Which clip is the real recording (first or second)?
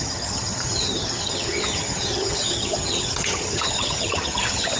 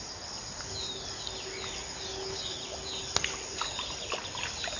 second